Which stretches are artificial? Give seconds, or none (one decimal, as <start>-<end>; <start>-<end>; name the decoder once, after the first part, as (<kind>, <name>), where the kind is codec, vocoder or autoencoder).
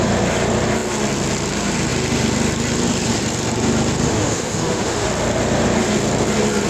4.1-5.1 (autoencoder, DAC-VAE)